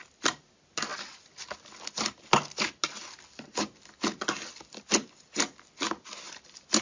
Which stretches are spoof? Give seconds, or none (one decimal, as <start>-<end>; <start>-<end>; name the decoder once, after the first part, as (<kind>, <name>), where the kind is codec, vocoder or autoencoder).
none